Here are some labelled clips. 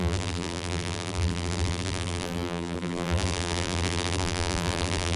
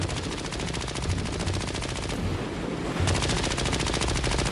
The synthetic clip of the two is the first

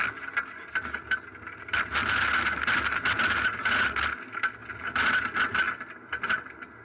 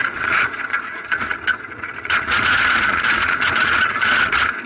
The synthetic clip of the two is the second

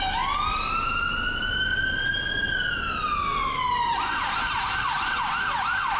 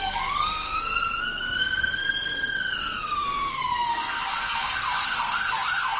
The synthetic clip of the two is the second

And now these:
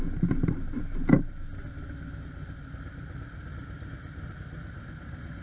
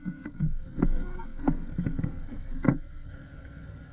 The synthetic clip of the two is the second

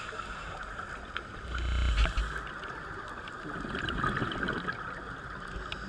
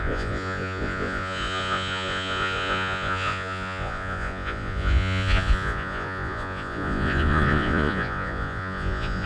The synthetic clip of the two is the second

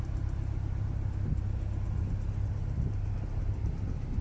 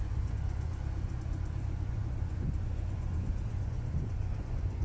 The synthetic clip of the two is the second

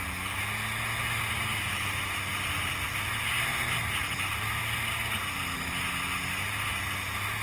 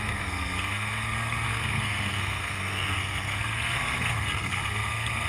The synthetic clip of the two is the second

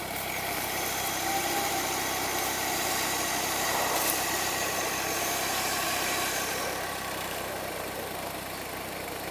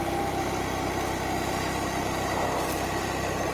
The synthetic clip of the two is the first